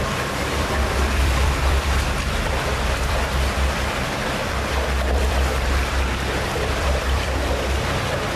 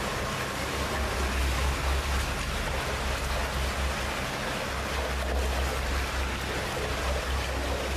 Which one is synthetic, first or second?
first